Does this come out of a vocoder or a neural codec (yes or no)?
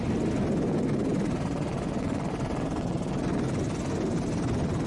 no